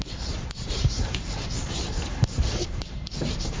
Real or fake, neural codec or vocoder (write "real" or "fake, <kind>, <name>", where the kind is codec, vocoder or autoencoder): fake, vocoder, BigVGAN v2